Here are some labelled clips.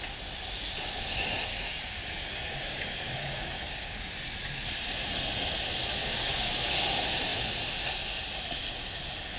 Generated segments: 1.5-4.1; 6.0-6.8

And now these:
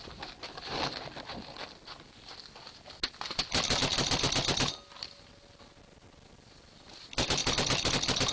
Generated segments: none

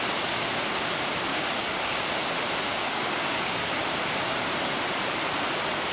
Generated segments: 1.3-2.1; 2.7-3.7

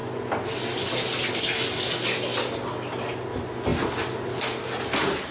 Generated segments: none

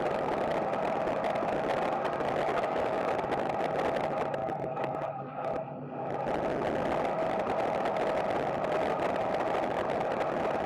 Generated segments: 2.5-3.1; 4.4-5.5

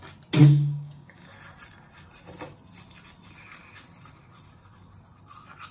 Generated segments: 0.4-1.3

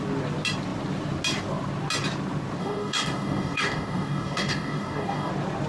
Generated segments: 2.6-5.3

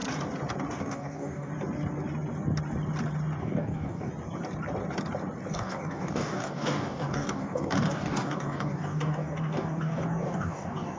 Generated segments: 0.8-1.5; 3.4-4.1; 5.5-11.0